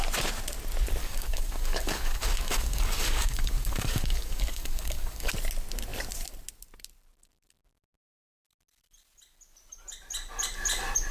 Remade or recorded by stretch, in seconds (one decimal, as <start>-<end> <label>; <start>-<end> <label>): 0.0-1.0 recorded; 1.0-5.3 remade; 5.3-11.1 recorded